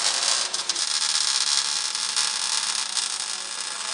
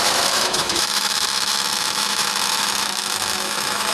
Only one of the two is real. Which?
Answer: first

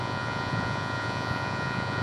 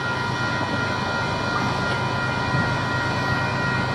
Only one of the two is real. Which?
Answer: second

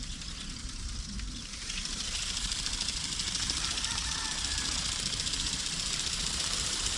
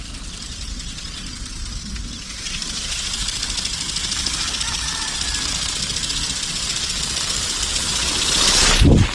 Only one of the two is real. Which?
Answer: second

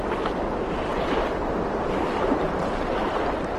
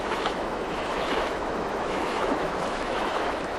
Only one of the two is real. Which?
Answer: first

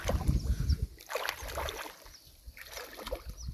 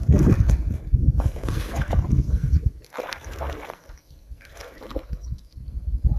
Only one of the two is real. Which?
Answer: first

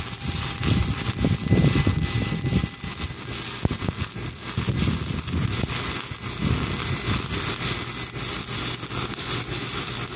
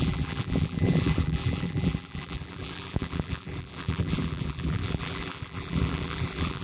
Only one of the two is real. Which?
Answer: first